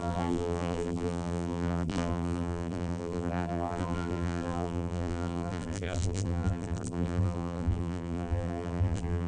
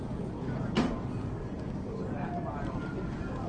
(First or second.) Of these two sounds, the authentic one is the second